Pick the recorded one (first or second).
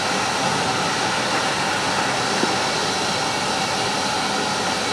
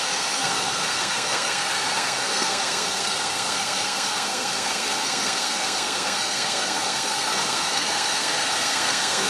first